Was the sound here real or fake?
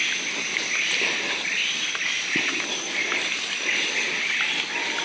real